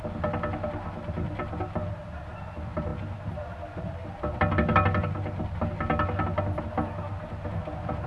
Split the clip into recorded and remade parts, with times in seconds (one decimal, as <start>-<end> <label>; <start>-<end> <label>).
0.0-8.1 recorded